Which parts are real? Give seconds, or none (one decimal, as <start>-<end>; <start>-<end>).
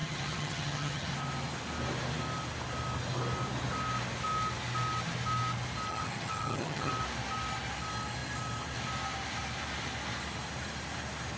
1.1-5.9; 6.9-11.4